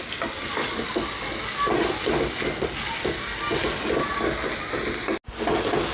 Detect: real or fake real